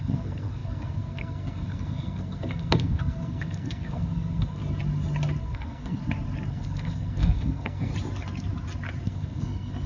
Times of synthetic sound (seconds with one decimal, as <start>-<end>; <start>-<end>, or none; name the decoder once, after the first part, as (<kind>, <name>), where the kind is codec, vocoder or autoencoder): 0.0-4.6 (codec, SNAC); 5.4-6.0; 6.5-7.9; 9.0-9.9